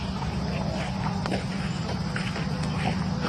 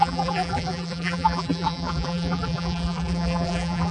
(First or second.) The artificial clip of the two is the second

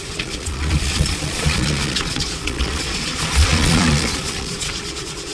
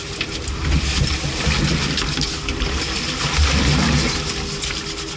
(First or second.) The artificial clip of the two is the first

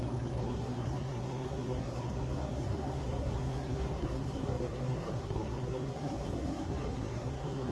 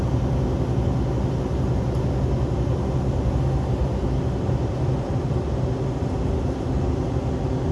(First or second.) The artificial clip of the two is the first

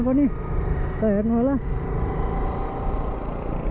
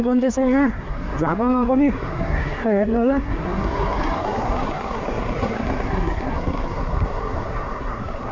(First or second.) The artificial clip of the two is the second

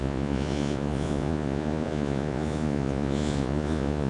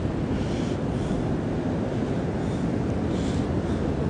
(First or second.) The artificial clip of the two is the first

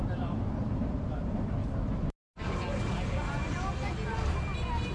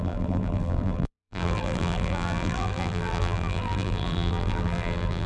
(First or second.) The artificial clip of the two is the second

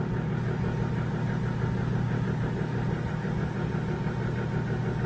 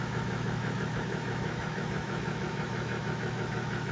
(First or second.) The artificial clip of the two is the second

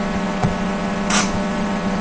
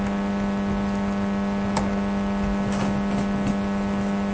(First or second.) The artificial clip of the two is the first